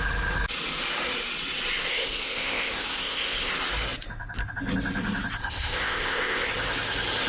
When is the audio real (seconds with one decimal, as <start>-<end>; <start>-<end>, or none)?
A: 0.0-1.9; 3.5-5.4; 6.5-7.3